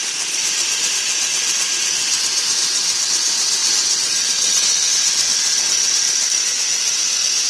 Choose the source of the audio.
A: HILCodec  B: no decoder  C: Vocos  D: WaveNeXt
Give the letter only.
B